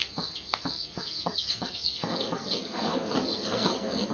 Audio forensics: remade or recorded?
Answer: remade